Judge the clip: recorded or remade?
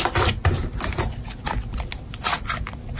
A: recorded